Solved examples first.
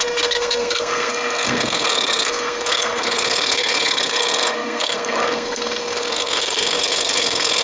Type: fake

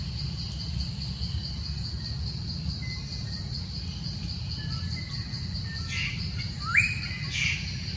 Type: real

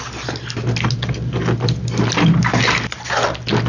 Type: real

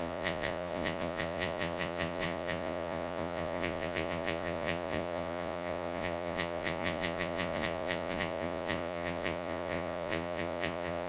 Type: fake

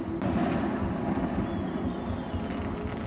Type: real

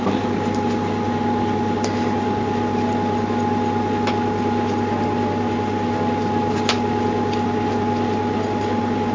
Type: real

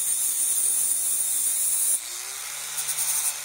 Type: real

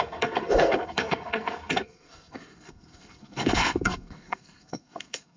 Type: fake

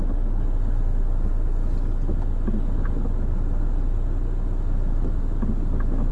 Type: real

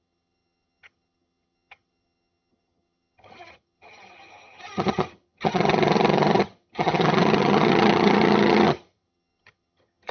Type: fake